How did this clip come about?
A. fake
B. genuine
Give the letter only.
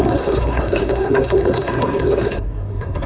A